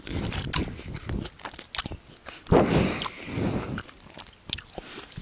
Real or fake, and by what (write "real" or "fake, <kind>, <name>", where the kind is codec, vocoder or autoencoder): real